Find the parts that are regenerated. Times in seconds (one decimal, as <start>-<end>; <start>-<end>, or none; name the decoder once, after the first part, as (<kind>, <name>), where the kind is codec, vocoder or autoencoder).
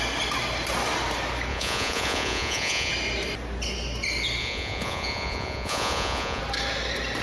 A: 1.5-2.9 (vocoder, Vocos); 4.4-6.4